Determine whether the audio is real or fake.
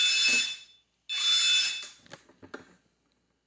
real